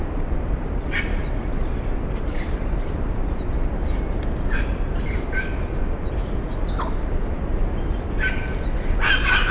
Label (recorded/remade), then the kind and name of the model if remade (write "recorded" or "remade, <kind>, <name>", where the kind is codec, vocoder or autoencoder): recorded